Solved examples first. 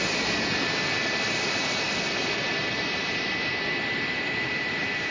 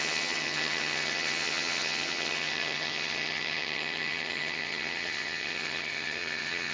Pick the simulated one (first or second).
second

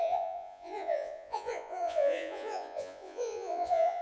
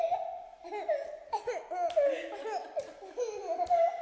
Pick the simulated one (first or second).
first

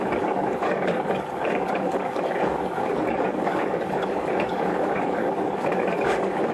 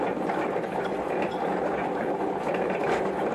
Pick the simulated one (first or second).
first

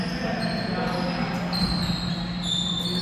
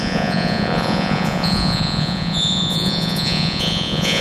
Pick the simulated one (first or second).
second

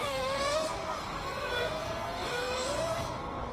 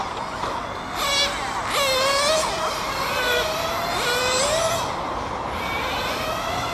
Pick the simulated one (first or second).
first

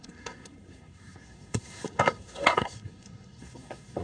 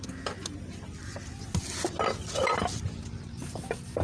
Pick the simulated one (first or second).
first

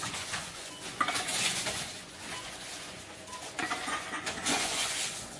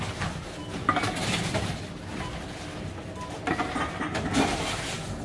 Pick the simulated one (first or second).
first